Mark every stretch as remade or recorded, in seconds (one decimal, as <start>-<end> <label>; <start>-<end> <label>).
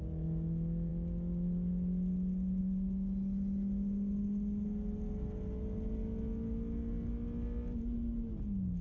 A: 0.0-8.8 recorded